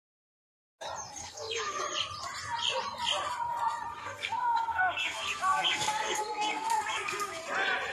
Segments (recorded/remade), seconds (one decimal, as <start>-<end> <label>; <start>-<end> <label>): 0.0-1.2 recorded; 1.2-1.8 remade; 1.8-4.0 recorded; 4.0-7.4 remade; 7.4-7.9 recorded